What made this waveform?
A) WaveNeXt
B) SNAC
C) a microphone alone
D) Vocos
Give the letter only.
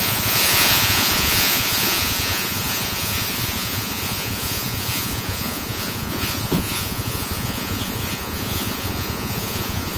D